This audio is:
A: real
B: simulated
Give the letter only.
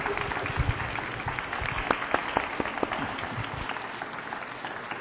A